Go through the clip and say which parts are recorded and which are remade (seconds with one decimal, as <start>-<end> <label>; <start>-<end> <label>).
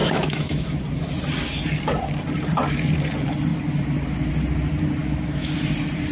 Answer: 0.0-0.8 remade; 0.8-5.0 recorded; 5.0-5.5 remade; 5.5-6.1 recorded